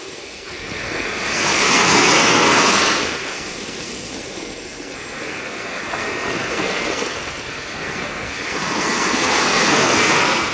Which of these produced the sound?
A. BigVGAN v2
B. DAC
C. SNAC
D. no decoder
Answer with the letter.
C